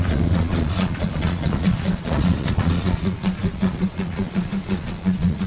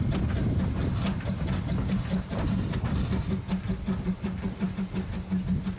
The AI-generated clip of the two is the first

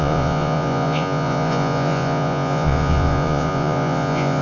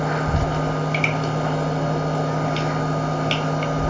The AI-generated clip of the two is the first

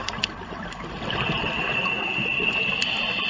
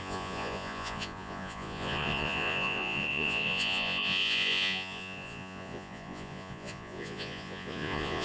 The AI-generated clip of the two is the second